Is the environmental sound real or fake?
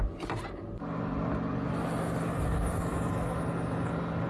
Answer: real